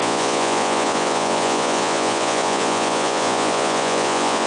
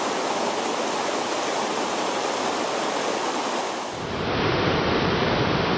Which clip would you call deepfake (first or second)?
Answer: first